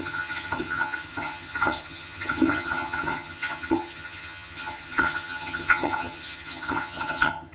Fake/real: fake